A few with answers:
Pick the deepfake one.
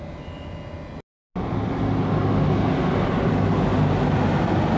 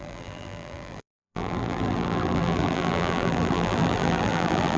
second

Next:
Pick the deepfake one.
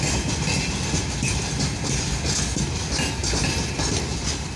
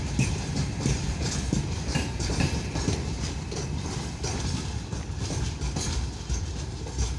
second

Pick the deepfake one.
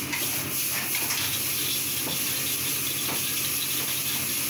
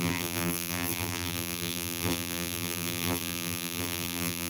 second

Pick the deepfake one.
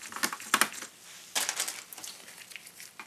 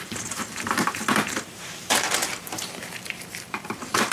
second